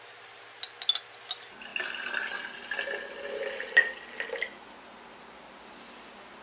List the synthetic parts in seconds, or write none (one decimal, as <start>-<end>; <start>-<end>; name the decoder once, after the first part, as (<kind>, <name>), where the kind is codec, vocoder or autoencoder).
none